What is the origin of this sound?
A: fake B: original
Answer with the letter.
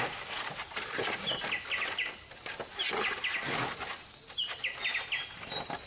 B